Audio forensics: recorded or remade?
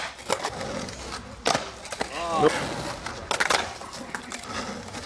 recorded